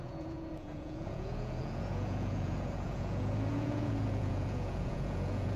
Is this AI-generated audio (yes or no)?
yes